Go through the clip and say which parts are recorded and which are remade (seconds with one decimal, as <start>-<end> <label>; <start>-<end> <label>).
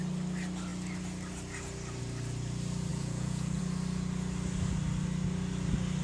0.0-2.9 recorded; 2.9-3.6 remade; 3.6-6.0 recorded